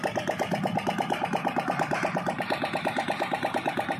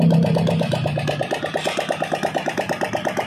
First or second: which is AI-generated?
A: first